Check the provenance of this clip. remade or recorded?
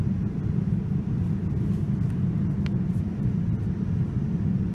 recorded